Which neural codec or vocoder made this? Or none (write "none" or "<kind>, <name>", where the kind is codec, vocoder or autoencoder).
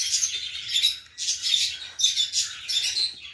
none